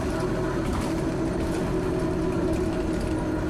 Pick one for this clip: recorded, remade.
recorded